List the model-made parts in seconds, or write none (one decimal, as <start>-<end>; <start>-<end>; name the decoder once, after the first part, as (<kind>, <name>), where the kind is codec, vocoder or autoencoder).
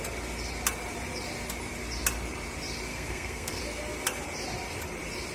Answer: 2.9-3.6 (codec, SNAC)